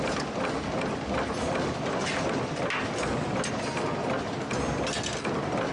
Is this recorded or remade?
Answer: recorded